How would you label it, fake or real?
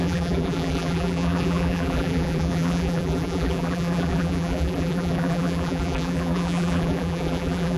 fake